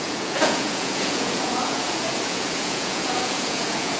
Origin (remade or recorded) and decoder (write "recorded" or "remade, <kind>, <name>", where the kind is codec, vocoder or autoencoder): remade, vocoder, Vocos